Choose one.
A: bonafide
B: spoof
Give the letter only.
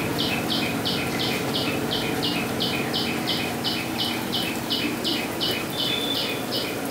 B